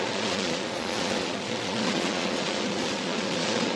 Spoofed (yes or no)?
yes